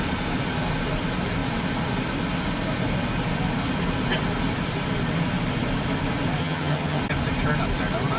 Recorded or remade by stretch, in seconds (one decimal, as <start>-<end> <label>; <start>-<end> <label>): 0.0-6.4 recorded; 6.4-7.0 remade; 7.0-8.2 recorded